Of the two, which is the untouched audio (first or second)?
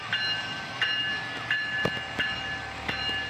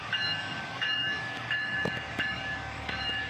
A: first